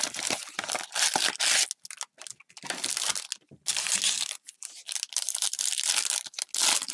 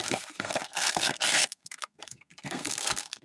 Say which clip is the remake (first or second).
second